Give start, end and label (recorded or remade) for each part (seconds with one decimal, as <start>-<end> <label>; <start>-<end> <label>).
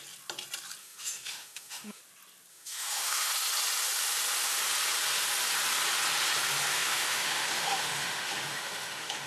0.0-0.8 recorded; 0.8-2.0 remade; 2.0-2.5 recorded; 2.5-3.3 remade; 3.3-6.7 recorded; 6.7-9.3 remade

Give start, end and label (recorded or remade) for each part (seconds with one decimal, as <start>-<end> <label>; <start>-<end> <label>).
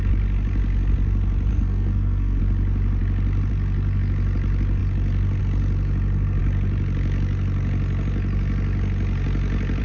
0.0-1.5 recorded; 1.5-2.4 remade; 2.4-9.8 recorded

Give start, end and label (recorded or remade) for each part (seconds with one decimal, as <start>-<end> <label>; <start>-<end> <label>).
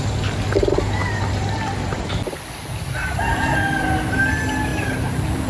0.0-5.5 recorded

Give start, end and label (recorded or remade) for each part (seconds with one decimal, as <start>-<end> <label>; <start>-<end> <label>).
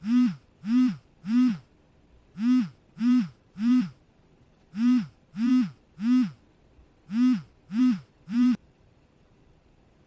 0.0-1.5 remade; 1.5-3.0 recorded; 3.0-5.5 remade; 5.5-7.8 recorded; 7.8-10.1 remade